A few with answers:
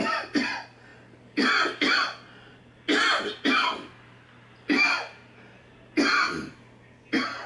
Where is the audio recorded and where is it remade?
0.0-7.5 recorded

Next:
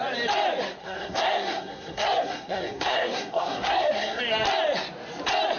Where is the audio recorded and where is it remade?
0.0-0.8 recorded; 0.8-4.2 remade; 4.2-5.6 recorded